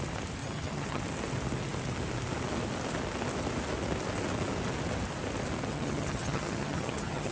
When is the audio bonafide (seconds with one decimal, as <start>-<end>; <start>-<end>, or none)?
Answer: 0.0-0.4; 1.0-5.7